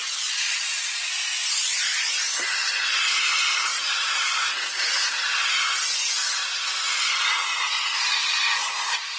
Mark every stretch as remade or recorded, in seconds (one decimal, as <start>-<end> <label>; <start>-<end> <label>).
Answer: 0.0-9.2 recorded